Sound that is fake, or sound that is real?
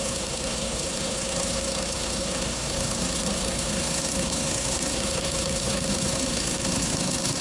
fake